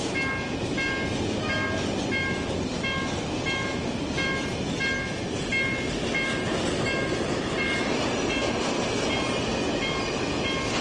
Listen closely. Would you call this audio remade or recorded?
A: recorded